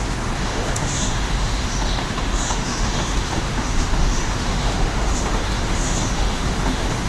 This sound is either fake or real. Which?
fake